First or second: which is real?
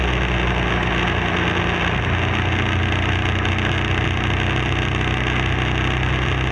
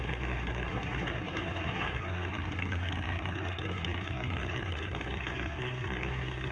first